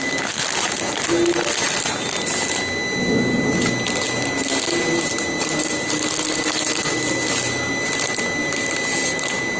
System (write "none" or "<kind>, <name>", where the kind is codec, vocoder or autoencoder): none